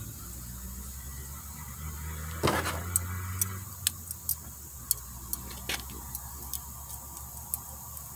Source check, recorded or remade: recorded